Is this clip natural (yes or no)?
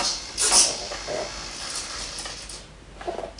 yes